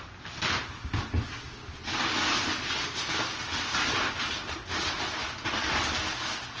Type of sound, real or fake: real